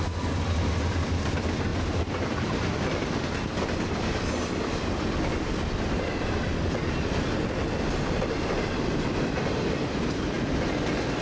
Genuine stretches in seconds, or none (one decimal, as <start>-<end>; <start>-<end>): 0.0-11.2